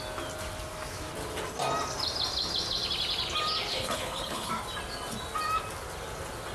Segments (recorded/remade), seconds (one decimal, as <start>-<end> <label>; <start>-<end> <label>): 0.0-3.7 recorded; 3.7-4.5 remade; 4.5-6.5 recorded